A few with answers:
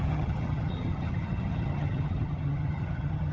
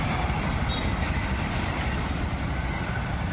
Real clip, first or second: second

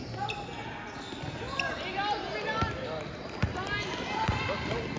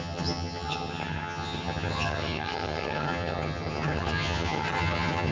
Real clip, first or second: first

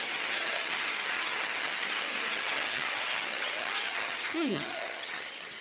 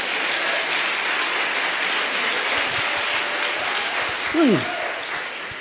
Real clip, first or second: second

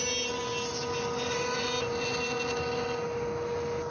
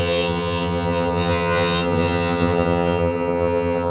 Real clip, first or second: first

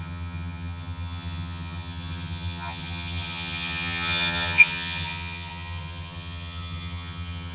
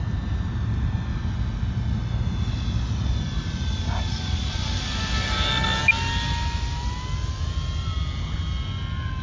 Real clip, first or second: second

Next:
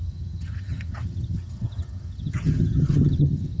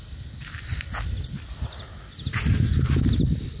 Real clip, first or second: second